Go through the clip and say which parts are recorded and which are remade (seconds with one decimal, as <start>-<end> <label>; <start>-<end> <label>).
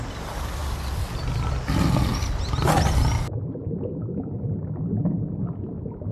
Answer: 0.0-6.1 recorded